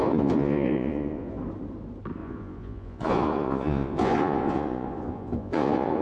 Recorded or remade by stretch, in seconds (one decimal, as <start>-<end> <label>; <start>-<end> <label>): 0.0-1.4 remade; 1.4-2.2 recorded; 2.2-6.0 remade